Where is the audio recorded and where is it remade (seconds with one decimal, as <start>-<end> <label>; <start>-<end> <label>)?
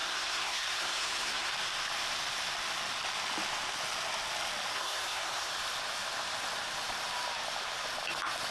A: 0.0-1.5 remade; 1.5-4.7 recorded; 4.7-5.5 remade; 5.5-8.5 recorded